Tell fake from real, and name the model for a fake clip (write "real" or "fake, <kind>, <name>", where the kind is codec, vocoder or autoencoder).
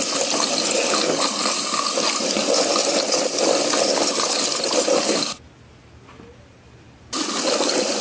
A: real